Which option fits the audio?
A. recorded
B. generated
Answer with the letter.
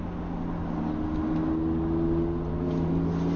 A